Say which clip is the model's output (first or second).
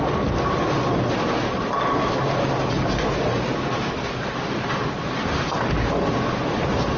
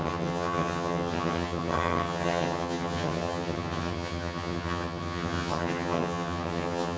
second